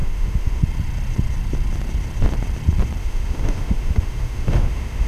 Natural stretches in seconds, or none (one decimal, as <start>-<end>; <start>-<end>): 0.6-3.0